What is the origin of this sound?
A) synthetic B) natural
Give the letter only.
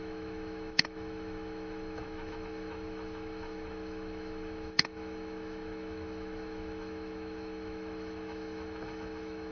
A